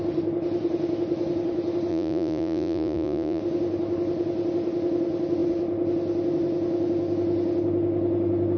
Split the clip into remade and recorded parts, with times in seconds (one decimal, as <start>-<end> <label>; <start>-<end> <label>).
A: 0.0-1.9 recorded; 1.9-3.4 remade; 3.4-8.6 recorded

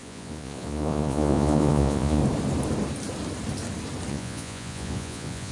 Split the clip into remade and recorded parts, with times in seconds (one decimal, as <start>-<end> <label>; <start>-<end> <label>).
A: 0.0-2.2 remade; 2.2-4.1 recorded; 4.1-5.5 remade

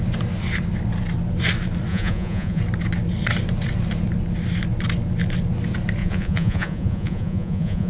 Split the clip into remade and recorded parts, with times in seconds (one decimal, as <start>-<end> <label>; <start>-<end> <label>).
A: 0.0-1.9 recorded; 1.9-2.6 remade; 2.6-6.0 recorded; 6.0-7.9 remade

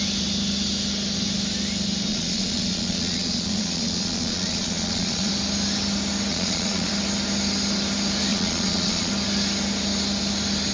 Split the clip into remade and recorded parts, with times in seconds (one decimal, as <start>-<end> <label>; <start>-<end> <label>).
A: 0.0-2.1 recorded; 2.1-5.3 remade; 5.3-6.3 recorded; 6.3-6.9 remade; 6.9-8.3 recorded; 8.3-9.1 remade; 9.1-10.7 recorded

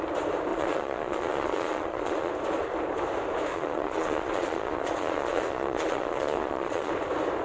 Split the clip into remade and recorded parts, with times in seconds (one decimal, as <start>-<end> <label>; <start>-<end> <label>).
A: 0.0-0.5 recorded; 0.5-2.3 remade; 2.3-3.5 recorded; 3.5-6.9 remade; 6.9-7.4 recorded

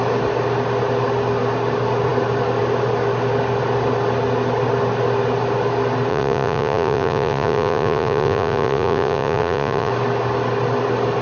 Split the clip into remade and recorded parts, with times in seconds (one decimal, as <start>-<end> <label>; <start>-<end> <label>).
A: 0.0-6.1 recorded; 6.1-9.9 remade; 9.9-11.2 recorded

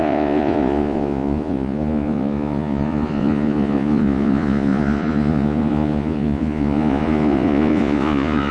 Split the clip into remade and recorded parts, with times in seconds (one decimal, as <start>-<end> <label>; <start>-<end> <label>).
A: 0.0-8.5 remade

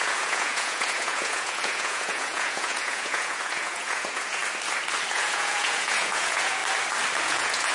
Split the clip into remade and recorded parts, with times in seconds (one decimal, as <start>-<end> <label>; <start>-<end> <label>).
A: 0.0-4.4 remade; 4.4-5.1 recorded; 5.1-6.6 remade; 6.6-7.2 recorded; 7.2-7.7 remade